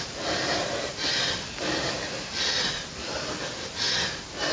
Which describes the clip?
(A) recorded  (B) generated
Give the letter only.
A